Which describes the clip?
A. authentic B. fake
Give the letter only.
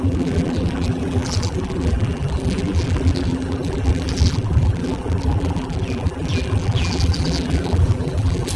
B